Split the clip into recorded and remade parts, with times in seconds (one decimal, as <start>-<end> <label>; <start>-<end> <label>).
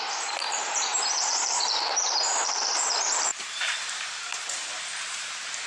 0.0-5.7 remade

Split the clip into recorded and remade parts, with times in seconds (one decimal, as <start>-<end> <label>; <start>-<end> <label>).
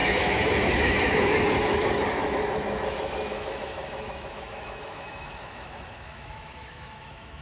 0.0-7.4 remade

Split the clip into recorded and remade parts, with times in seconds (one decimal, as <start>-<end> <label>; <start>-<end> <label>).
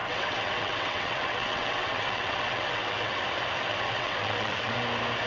0.0-3.2 remade; 3.2-3.7 recorded; 3.7-4.7 remade; 4.7-5.3 recorded